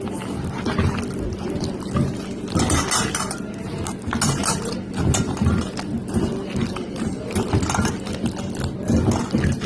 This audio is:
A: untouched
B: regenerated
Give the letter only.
A